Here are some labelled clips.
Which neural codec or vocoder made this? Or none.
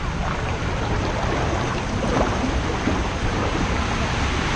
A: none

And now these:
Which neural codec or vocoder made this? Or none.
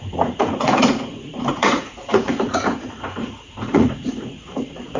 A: vocoder, Vocos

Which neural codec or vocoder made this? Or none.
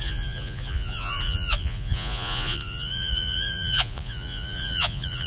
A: vocoder, Vocos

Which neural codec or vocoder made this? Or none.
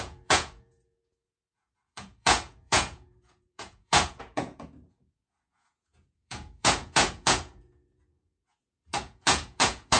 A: vocoder, Vocos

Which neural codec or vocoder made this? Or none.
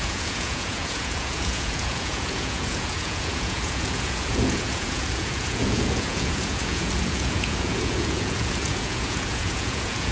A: vocoder, Vocos